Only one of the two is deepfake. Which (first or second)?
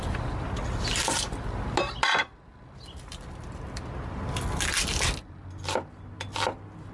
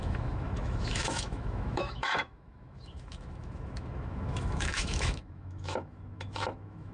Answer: second